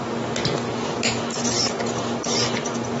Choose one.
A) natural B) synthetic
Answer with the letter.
A